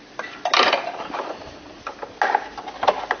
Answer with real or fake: real